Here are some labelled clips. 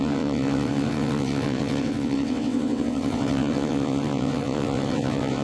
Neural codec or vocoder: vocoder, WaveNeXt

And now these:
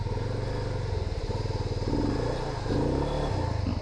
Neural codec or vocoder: none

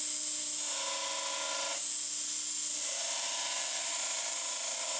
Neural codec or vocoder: none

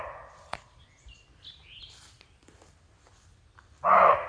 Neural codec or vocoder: none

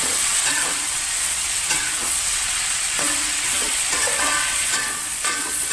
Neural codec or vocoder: vocoder, WaveNeXt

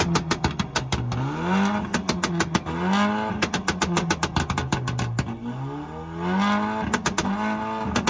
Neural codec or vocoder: none